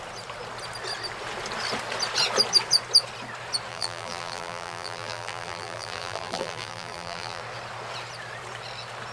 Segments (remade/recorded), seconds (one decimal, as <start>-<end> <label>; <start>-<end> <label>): 0.0-3.7 recorded; 3.7-7.4 remade; 7.4-9.1 recorded